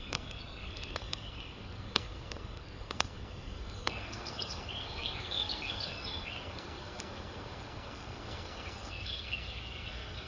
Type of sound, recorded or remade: remade